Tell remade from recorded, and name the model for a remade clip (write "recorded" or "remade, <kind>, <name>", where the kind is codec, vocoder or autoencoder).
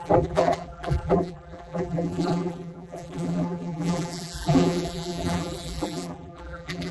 remade, vocoder, BigVGAN v2